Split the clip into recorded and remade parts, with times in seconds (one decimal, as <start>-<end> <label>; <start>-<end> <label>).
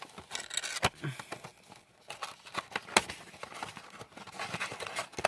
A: 0.0-5.3 recorded